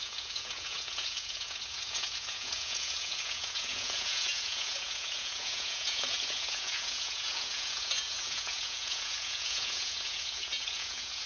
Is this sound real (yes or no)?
no